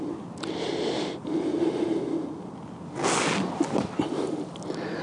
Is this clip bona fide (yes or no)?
yes